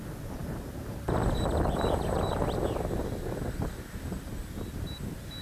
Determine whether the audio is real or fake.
real